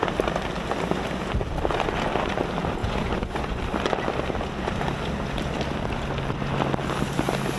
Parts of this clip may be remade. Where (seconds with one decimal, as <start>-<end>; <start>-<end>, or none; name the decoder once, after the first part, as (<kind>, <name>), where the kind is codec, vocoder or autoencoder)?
2.8-3.6 (vocoder, Vocos)